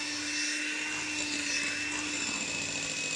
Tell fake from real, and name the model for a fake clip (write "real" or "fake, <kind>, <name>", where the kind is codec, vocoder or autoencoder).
real